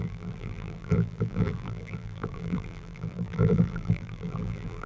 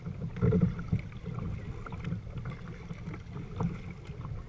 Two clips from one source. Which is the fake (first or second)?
first